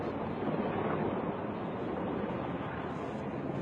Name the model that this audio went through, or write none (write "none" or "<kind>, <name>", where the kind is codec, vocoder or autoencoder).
none